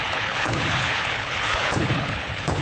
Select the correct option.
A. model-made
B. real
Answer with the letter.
A